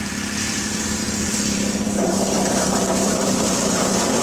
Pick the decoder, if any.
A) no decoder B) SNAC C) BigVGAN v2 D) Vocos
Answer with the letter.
C